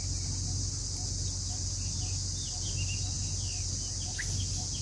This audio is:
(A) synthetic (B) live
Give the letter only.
B